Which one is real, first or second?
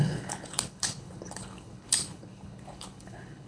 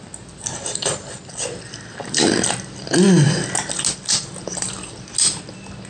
second